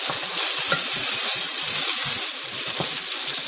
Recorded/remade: remade